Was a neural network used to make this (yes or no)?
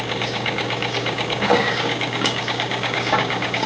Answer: yes